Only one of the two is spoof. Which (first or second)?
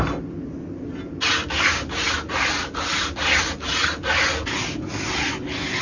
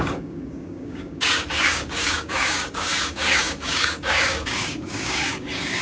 second